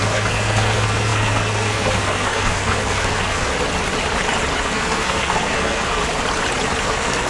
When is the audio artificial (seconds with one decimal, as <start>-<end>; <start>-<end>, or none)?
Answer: 0.0-3.5; 4.6-6.0; 6.8-7.3